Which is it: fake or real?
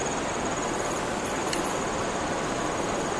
real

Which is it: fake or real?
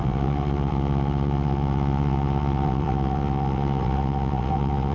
fake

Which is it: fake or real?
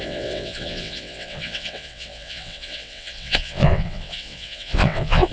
fake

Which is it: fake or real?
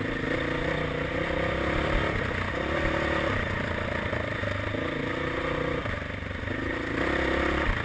real